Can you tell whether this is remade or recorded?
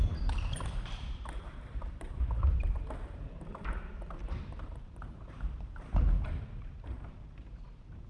remade